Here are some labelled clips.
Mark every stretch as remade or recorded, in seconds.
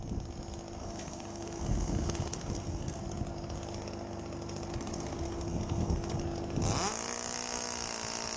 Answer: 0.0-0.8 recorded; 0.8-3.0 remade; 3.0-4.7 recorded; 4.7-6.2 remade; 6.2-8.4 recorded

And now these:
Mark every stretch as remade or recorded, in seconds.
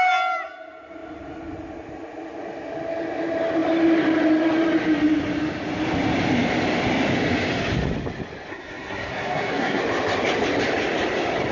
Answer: 0.0-8.5 recorded; 8.5-9.8 remade; 9.8-11.5 recorded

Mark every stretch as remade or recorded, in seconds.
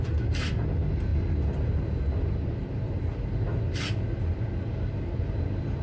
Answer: 0.0-5.8 recorded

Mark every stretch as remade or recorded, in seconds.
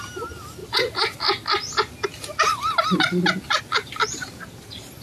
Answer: 0.0-5.0 recorded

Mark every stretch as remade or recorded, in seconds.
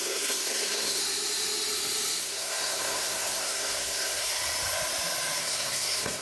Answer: 0.0-1.0 remade; 1.0-2.2 recorded; 2.2-4.4 remade; 4.4-5.4 recorded; 5.4-6.2 remade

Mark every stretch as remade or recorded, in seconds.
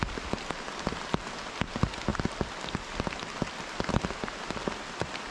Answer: 0.0-5.3 recorded